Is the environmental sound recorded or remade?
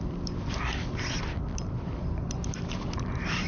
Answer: remade